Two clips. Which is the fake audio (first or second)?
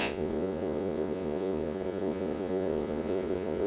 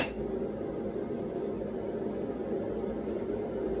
first